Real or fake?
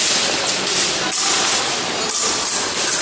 real